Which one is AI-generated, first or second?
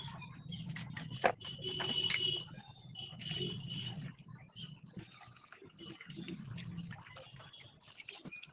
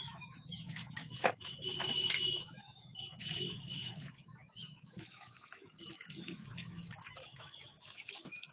second